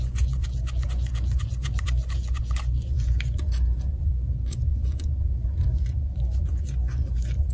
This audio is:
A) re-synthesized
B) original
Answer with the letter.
A